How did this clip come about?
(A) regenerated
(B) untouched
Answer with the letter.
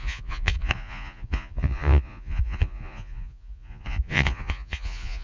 A